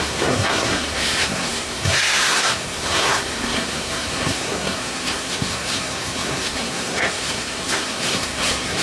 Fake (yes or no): yes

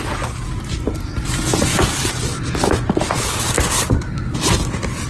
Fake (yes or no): no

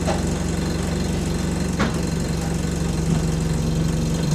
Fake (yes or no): no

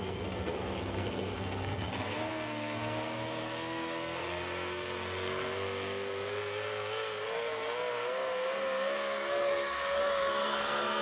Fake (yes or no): yes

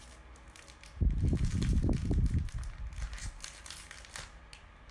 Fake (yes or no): no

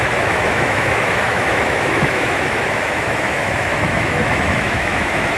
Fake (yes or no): yes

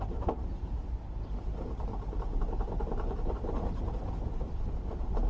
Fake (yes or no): yes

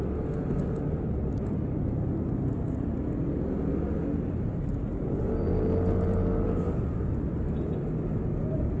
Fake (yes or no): no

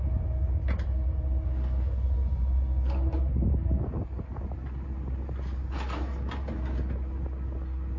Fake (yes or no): no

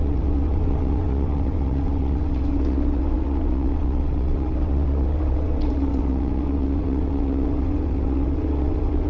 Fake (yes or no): yes